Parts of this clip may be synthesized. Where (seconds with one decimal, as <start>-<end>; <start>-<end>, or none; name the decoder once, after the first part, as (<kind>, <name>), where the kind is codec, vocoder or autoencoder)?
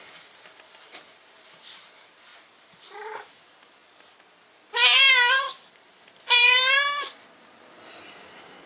0.0-2.3 (vocoder, BigVGAN v2); 3.3-3.8; 5.7-8.7